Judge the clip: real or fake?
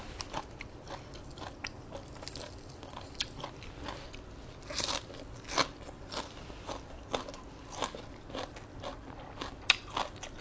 real